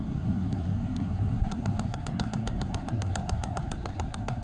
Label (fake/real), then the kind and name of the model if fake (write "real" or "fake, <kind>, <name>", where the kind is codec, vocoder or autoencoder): fake, codec, SNAC